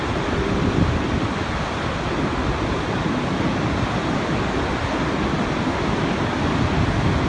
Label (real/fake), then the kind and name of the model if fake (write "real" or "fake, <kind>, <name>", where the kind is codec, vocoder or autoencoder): real